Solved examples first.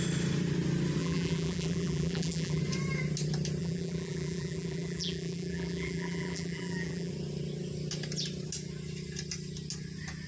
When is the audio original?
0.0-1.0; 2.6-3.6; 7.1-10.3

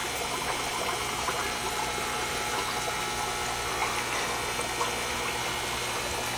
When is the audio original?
3.0-6.4

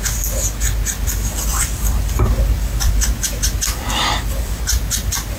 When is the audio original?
0.0-1.5; 4.6-5.4

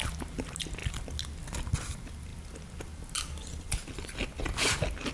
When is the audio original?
0.0-5.1

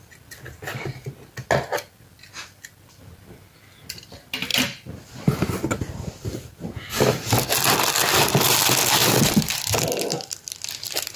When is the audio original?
0.0-4.5; 6.6-9.0; 9.8-11.2

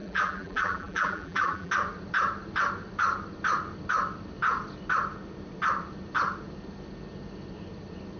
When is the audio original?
1.7-8.2

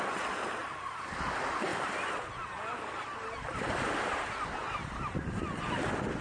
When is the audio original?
0.0-0.6; 1.2-1.7; 3.9-4.6; 5.2-6.2